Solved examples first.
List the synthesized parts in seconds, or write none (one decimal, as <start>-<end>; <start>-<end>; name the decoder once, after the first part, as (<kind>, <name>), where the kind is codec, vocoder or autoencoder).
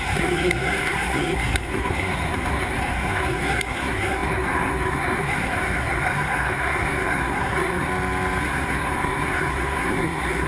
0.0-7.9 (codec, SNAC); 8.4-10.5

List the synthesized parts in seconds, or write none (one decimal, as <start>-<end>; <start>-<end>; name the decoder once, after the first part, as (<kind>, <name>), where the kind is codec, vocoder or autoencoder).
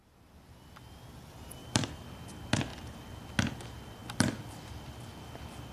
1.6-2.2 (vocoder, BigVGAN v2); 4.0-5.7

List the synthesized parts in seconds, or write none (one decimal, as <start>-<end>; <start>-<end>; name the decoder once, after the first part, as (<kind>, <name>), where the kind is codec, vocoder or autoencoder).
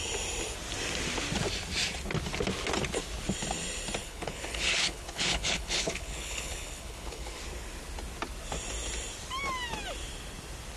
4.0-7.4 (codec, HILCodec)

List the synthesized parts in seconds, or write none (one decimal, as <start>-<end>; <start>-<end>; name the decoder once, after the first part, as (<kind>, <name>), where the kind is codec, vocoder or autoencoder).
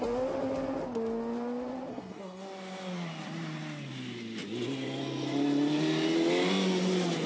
1.9-2.4 (codec, SNAC)